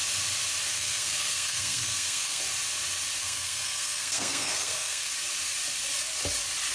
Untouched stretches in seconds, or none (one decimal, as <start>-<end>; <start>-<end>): 0.0-0.7; 2.4-3.2; 5.1-6.7